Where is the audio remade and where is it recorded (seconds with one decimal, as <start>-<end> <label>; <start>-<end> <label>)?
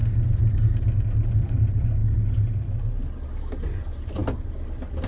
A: 0.0-5.1 recorded